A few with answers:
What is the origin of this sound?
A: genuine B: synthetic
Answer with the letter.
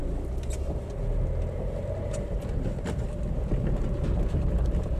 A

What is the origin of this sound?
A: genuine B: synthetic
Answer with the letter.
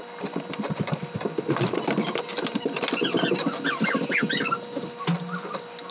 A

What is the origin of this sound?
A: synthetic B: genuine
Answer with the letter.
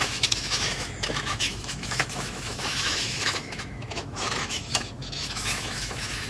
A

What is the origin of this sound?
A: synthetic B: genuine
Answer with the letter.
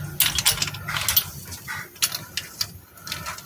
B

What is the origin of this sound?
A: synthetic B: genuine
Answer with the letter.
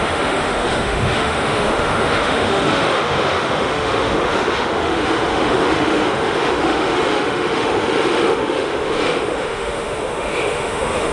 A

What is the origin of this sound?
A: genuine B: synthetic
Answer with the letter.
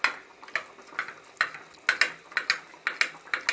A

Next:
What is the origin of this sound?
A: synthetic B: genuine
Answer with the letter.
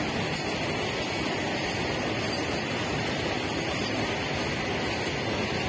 B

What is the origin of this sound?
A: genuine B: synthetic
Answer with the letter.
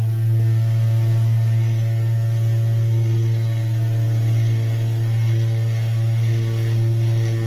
A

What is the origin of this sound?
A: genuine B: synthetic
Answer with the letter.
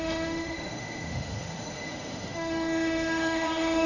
B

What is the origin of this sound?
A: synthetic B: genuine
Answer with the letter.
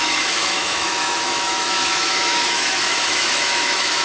A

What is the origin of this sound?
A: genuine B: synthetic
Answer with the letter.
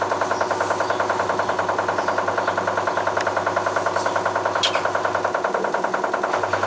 A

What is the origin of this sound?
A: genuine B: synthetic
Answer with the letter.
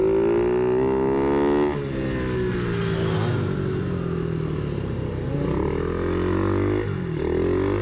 A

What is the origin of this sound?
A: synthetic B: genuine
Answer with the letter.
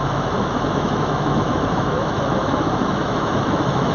A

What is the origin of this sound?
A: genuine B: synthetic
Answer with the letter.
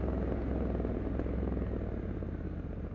A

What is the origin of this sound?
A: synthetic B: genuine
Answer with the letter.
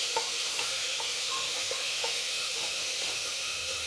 A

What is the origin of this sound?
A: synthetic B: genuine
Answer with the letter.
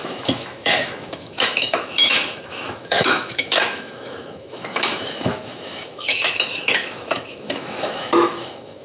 A